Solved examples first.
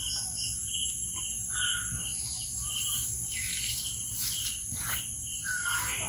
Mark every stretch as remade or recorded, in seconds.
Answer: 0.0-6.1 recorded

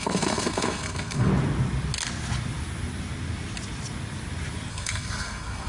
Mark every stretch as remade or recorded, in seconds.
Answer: 0.0-1.3 remade; 1.3-4.7 recorded; 4.7-5.7 remade